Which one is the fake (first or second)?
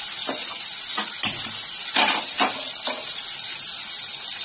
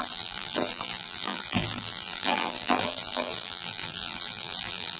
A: second